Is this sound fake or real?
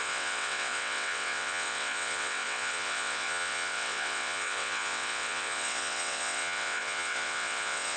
fake